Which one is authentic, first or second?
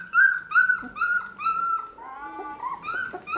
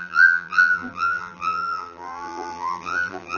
first